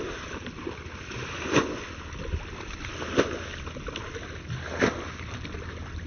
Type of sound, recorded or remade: recorded